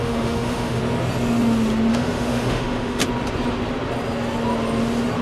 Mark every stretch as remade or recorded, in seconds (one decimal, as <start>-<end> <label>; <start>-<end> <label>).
0.0-0.8 remade; 0.8-1.9 recorded; 1.9-3.0 remade; 3.0-5.2 recorded